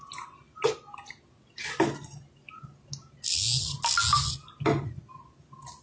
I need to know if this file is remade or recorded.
recorded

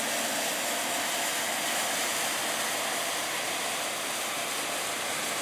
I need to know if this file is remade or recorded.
recorded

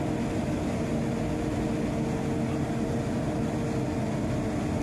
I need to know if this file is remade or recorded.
recorded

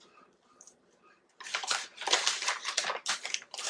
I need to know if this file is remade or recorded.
remade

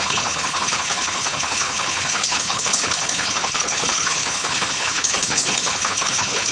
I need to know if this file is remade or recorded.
remade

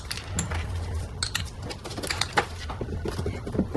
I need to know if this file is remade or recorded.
recorded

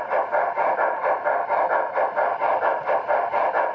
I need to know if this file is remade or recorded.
recorded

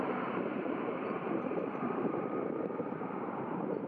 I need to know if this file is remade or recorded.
remade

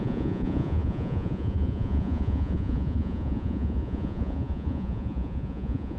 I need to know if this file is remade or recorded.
remade